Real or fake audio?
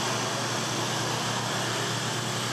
real